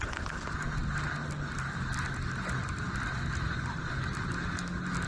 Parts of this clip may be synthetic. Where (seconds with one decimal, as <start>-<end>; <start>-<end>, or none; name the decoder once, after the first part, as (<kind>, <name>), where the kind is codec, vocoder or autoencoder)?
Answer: none